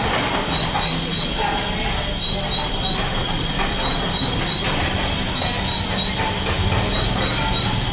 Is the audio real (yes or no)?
yes